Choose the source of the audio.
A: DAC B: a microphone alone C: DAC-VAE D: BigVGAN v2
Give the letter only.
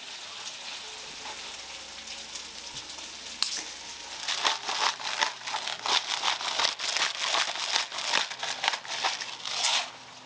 B